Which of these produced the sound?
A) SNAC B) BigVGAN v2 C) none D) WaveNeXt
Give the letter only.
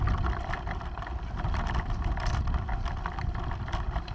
C